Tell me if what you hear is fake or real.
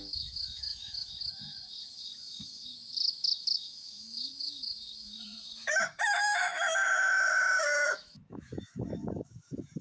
fake